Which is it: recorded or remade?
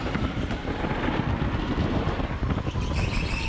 recorded